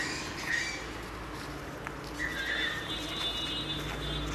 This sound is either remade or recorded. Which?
recorded